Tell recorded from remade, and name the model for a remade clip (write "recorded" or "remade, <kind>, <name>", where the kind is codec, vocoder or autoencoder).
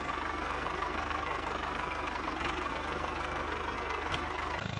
remade, codec, SNAC